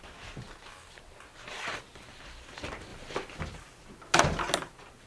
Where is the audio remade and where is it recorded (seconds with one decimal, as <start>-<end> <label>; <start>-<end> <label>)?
0.0-5.1 recorded